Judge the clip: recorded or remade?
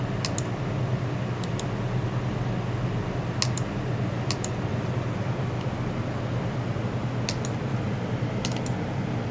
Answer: recorded